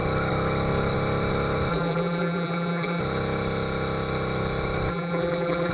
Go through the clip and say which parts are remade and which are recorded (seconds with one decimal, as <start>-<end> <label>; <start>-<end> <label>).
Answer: 0.0-1.7 recorded; 1.7-3.0 remade; 3.0-4.9 recorded; 4.9-5.7 remade